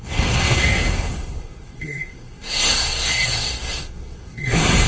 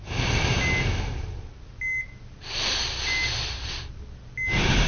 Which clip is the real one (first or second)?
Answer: second